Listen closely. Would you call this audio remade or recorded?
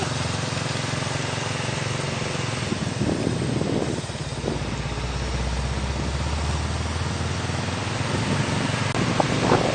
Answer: recorded